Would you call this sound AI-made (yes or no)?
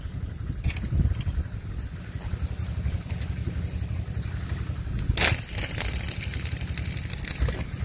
no